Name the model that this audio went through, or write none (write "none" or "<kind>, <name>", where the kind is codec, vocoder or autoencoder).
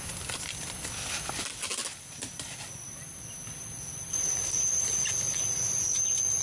none